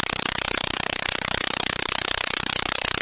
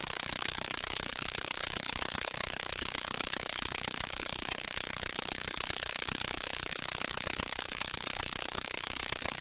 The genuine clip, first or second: first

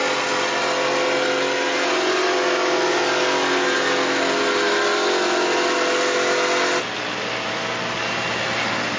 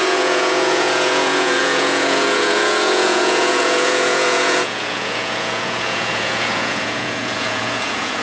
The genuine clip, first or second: first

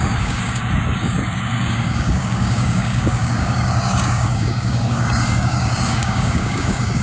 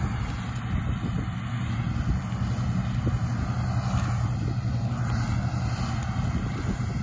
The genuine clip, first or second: second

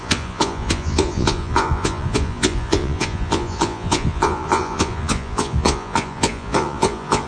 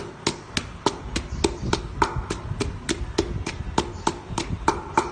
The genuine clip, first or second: second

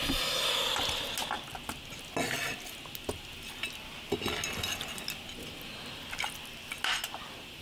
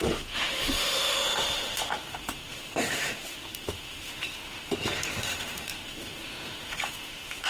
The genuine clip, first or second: first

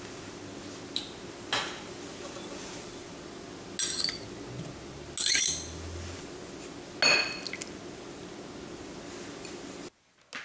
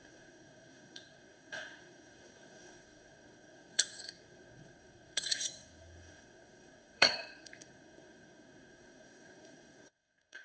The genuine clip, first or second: first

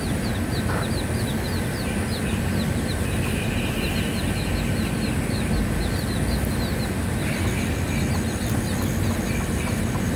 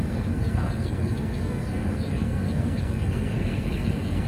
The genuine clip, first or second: first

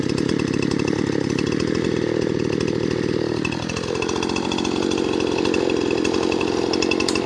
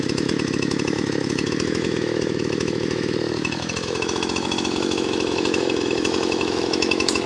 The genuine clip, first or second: first